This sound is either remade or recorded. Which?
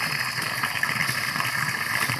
recorded